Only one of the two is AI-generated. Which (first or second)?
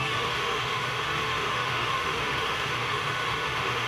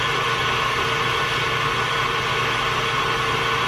first